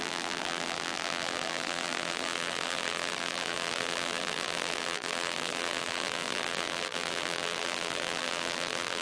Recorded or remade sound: remade